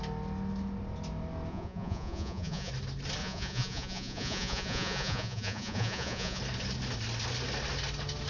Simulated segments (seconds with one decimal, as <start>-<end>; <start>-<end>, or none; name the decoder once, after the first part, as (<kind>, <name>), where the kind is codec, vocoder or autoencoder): 1.5-2.7 (vocoder, Vocos); 3.2-6.4